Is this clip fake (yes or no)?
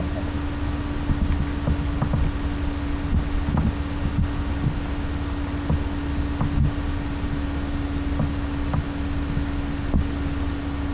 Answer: no